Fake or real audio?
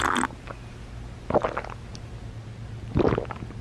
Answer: real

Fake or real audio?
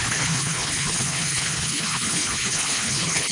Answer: fake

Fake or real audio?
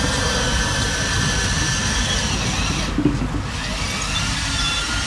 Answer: real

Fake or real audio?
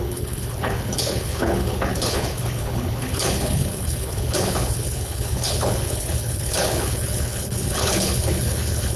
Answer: fake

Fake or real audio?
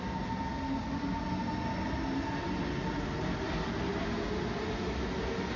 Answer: real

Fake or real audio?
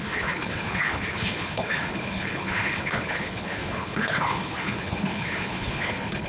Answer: fake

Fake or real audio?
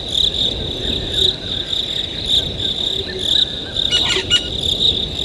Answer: real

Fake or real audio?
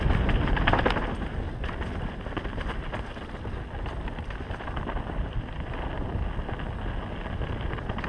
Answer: real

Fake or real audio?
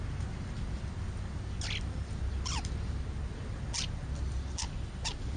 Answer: real